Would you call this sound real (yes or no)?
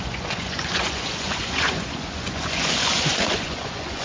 no